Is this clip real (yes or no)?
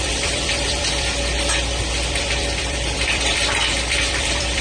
no